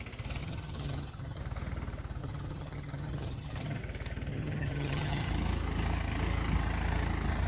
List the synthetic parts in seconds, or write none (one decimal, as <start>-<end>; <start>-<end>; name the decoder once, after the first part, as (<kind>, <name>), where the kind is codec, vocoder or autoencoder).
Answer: 0.4-1.4 (vocoder, HiFi-GAN); 2.2-3.8; 4.3-5.3